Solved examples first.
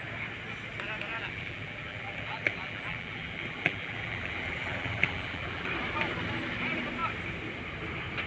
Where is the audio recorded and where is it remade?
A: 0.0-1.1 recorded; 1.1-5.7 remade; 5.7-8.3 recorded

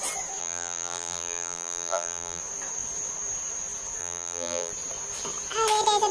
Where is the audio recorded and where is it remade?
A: 0.0-0.4 recorded; 0.4-2.4 remade; 2.4-4.0 recorded; 4.0-4.7 remade; 4.7-6.1 recorded

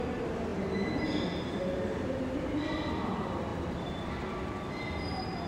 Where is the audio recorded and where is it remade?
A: 0.0-5.5 recorded

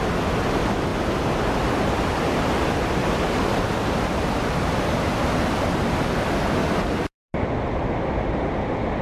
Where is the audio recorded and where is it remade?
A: 0.0-3.0 recorded; 3.0-5.4 remade; 5.4-6.6 recorded; 6.6-7.3 remade; 7.3-9.0 recorded

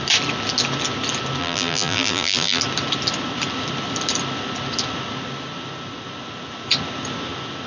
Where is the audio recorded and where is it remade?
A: 0.0-1.4 recorded; 1.4-2.6 remade; 2.6-7.7 recorded

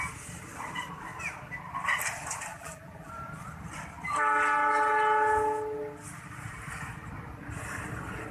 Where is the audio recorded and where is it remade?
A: 0.0-2.5 recorded; 2.5-3.1 remade; 3.1-8.3 recorded

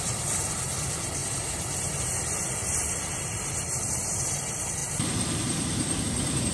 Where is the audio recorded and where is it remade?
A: 0.0-1.2 remade; 1.2-3.9 recorded; 3.9-6.5 remade